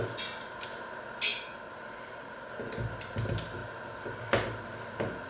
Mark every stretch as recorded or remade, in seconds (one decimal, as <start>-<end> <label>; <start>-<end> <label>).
0.0-5.3 recorded